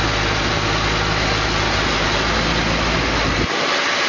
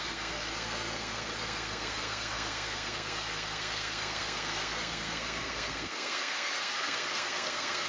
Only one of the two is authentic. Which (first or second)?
first